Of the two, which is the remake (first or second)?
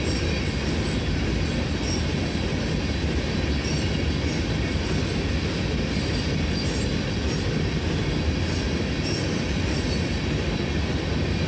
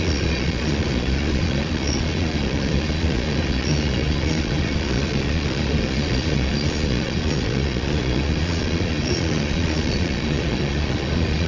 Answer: second